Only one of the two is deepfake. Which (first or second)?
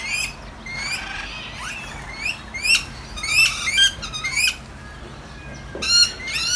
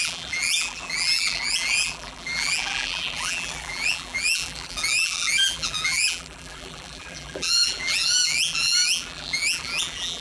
second